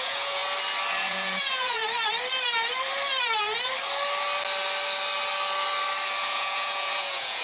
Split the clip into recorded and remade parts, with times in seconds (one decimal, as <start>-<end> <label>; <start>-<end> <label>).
0.0-0.4 remade; 0.4-1.1 recorded; 1.1-1.8 remade; 1.8-6.2 recorded; 6.2-7.4 remade